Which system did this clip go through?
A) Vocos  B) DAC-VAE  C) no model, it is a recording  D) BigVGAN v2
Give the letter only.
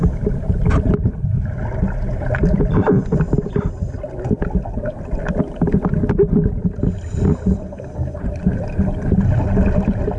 C